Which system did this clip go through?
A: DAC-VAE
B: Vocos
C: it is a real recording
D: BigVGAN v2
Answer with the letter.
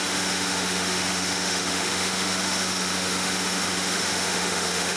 A